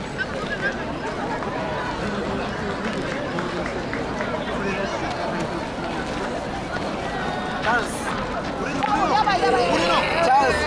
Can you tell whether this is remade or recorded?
recorded